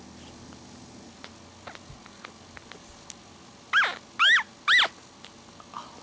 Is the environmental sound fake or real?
real